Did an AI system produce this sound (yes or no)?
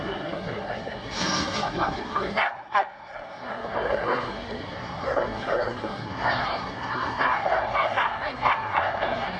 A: yes